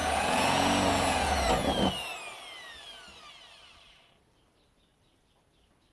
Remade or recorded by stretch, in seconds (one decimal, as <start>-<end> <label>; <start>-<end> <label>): 0.0-1.9 remade; 1.9-5.9 recorded